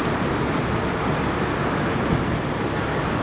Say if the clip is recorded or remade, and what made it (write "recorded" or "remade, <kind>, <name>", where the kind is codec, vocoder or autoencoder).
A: recorded